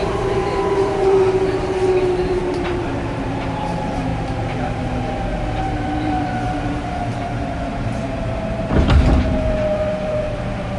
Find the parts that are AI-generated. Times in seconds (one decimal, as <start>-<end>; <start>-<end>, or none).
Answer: 0.0-4.1; 5.6-10.8